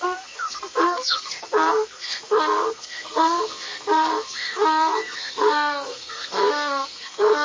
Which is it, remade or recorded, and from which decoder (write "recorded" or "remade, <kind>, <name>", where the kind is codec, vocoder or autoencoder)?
remade, codec, SNAC